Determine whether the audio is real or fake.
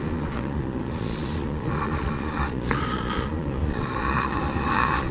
fake